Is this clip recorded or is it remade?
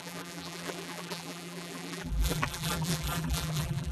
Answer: remade